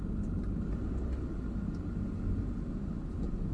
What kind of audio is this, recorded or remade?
recorded